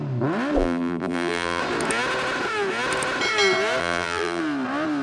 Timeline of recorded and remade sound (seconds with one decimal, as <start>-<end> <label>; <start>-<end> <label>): 0.0-0.6 recorded; 0.6-1.6 remade; 1.6-3.8 recorded; 3.8-4.4 remade; 4.4-5.0 recorded